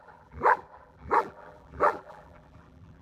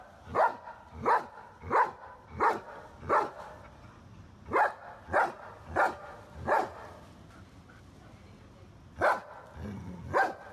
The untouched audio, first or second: second